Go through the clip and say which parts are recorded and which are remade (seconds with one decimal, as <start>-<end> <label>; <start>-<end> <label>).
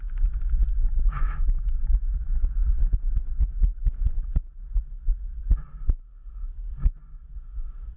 0.0-6.9 recorded; 6.9-8.0 remade